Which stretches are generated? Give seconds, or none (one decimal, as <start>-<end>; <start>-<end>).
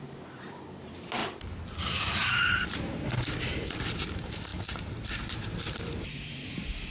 0.0-1.2; 1.8-6.9